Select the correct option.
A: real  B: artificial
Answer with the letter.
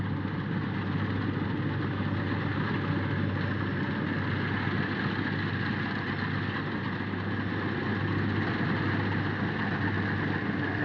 A